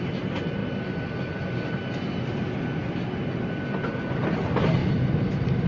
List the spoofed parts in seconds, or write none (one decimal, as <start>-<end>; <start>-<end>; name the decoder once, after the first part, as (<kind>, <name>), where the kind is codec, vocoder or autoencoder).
none